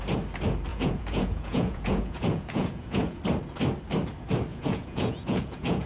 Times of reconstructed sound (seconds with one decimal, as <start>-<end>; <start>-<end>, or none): 0.7-3.2; 4.5-5.9